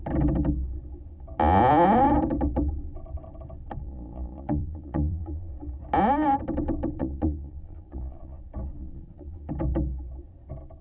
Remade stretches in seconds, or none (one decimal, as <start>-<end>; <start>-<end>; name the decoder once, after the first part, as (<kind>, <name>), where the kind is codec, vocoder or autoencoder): 3.8-5.5 (vocoder, Vocos); 7.0-8.4; 8.8-9.5